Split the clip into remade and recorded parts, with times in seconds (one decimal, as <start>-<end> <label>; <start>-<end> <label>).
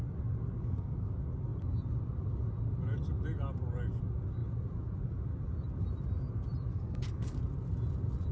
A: 0.0-0.6 recorded; 0.6-1.1 remade; 1.1-6.7 recorded; 6.7-7.4 remade; 7.4-8.3 recorded